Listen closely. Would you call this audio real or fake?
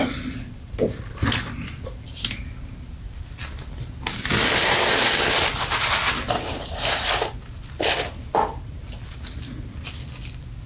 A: real